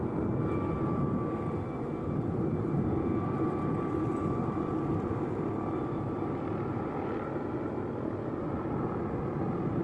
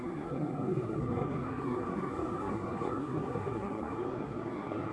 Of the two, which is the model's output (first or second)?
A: second